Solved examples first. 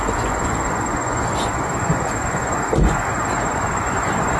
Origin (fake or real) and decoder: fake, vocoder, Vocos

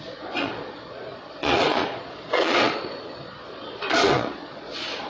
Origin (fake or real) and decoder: fake, vocoder, Vocos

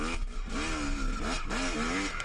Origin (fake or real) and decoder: real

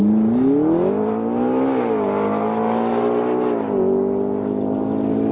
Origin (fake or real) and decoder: real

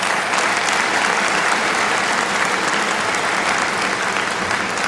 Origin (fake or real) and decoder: real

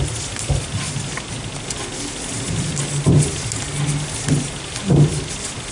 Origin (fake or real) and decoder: real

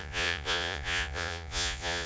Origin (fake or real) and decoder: fake, vocoder, Vocos